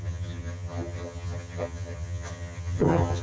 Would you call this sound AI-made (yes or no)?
yes